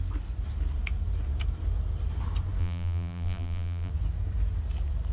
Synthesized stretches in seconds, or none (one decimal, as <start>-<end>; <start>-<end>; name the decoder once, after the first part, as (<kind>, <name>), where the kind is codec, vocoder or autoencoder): 2.6-3.9 (vocoder, BigVGAN v2)